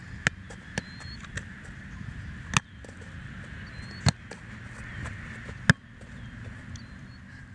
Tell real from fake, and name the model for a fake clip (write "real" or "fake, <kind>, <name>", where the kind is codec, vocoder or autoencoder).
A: real